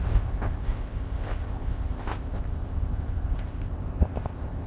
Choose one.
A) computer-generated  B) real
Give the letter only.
A